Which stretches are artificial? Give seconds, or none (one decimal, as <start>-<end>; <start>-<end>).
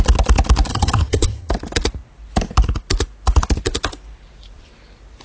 0.7-1.5